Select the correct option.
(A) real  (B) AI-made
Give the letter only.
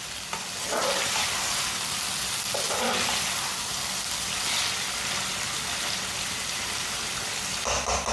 A